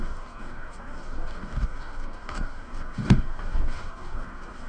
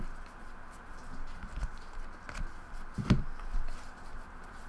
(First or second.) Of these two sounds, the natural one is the second